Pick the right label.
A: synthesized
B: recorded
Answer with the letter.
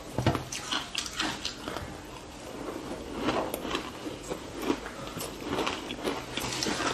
B